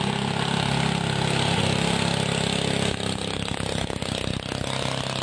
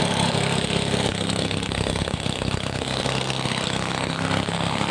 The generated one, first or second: second